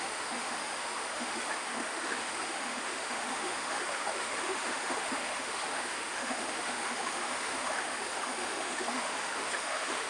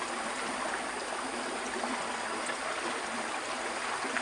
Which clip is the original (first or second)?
second